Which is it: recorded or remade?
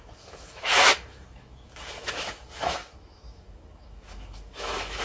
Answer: remade